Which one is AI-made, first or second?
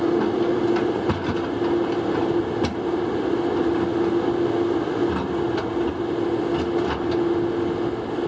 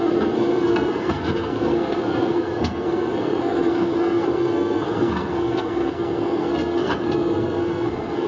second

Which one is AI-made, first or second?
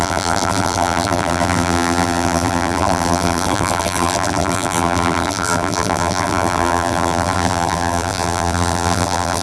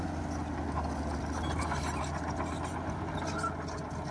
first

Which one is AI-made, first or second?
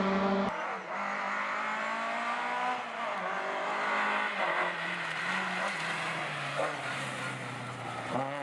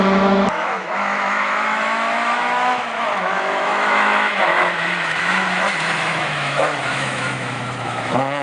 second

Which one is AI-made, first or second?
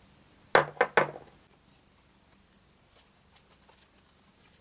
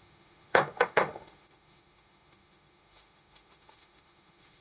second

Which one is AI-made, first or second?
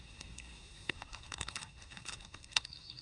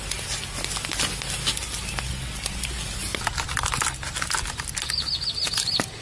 first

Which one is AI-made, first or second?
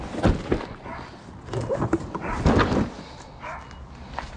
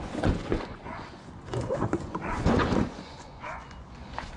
second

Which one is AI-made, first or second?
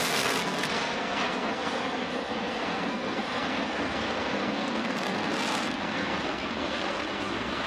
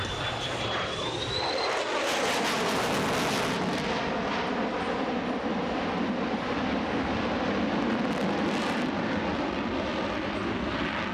first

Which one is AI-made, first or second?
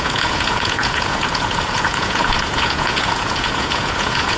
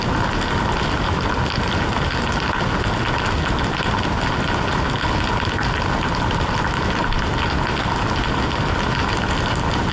first